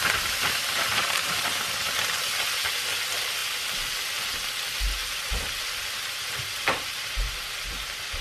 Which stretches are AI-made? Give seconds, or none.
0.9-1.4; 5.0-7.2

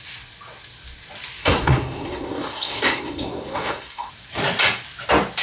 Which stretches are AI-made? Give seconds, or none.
1.4-4.1

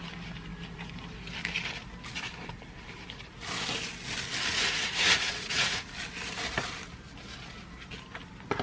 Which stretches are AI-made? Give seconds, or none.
4.5-5.9

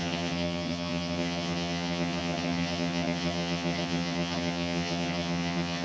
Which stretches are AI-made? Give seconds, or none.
0.0-5.8

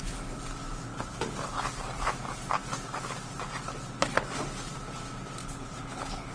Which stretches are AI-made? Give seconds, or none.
0.9-1.5; 5.4-6.3

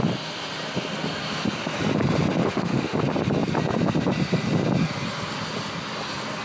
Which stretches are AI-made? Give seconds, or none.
2.4-3.0

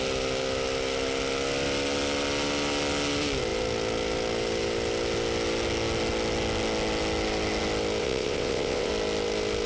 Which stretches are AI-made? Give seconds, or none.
8.0-8.9

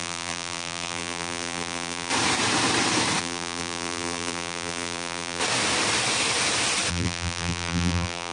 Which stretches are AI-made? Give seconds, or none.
0.0-2.1; 3.2-5.4; 6.9-8.3